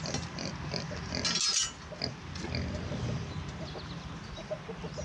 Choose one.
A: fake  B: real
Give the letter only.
B